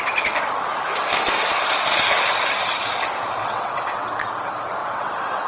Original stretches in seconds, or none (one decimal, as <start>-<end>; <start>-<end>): 0.0-3.4; 4.1-4.8